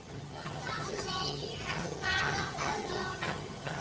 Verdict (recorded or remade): remade